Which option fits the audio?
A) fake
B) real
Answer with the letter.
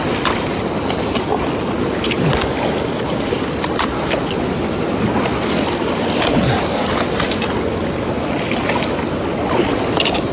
B